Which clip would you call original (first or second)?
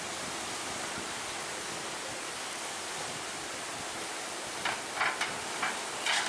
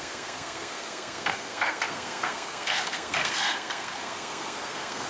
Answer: first